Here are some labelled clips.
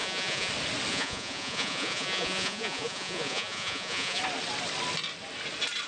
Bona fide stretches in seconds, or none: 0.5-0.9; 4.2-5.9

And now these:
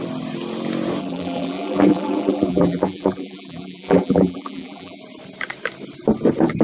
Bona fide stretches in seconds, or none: 0.0-1.0; 5.0-6.6

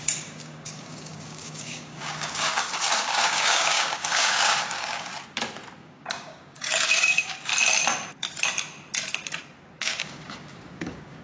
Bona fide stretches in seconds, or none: 5.1-5.8; 7.5-9.8

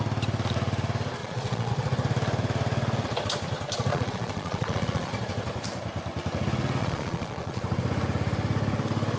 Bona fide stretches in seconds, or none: 0.0-1.2; 1.7-3.9; 5.1-6.8; 7.6-9.2

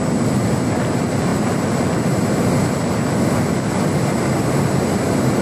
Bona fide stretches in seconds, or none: 0.0-5.4

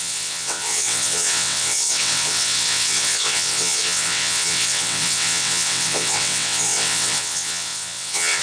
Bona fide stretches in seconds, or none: none